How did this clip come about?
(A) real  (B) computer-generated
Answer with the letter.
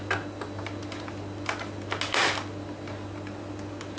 A